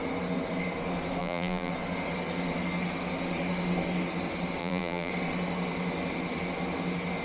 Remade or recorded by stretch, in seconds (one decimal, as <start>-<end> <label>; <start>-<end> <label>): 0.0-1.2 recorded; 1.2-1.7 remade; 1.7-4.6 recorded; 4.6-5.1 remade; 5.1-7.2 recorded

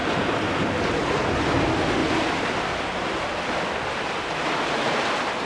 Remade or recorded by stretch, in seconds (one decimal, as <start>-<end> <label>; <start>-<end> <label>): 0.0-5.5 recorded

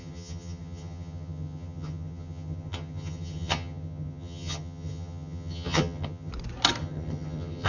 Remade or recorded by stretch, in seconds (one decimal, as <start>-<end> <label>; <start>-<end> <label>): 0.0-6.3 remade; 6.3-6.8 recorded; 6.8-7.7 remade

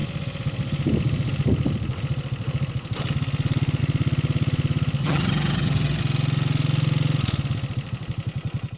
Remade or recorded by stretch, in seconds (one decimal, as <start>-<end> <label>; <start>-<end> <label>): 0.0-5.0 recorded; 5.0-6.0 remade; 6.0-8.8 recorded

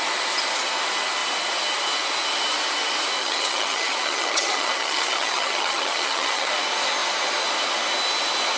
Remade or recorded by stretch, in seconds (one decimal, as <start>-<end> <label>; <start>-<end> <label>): 0.0-3.2 recorded; 3.2-6.5 remade; 6.5-8.6 recorded

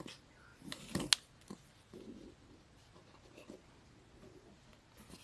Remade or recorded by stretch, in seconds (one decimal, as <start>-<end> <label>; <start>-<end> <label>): 0.0-5.2 recorded